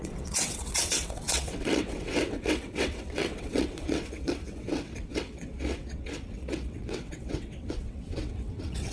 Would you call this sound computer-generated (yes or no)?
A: yes